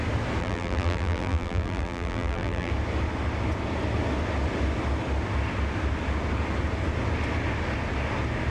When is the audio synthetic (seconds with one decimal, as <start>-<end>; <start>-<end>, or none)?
0.4-2.7